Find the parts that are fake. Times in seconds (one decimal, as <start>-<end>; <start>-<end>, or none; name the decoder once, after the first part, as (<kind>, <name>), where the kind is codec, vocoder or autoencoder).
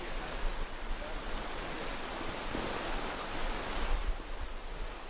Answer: none